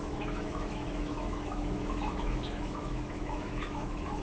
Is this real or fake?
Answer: fake